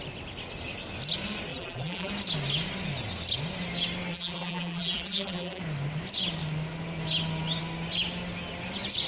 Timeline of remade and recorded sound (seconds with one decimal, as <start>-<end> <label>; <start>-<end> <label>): 0.0-1.5 recorded; 1.5-2.1 remade; 2.1-4.1 recorded; 4.1-5.6 remade; 5.6-9.1 recorded